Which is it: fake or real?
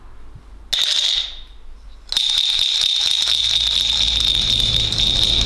real